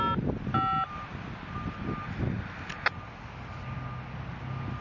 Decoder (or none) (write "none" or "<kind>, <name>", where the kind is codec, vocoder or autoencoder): none